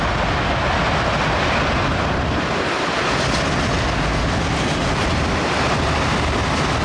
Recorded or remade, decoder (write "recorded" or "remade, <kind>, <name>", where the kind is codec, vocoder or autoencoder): recorded